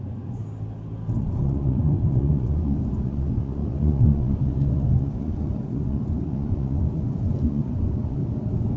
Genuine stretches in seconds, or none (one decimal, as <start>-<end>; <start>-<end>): 0.4-1.2; 8.2-8.8